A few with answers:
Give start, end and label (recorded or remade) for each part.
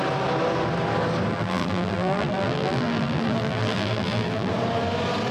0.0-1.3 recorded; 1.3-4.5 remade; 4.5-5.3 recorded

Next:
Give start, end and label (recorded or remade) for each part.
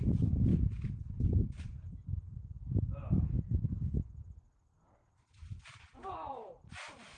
0.0-5.0 recorded; 5.0-7.2 remade